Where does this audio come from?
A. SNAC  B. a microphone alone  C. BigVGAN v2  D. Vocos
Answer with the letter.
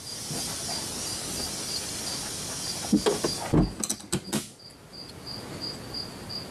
B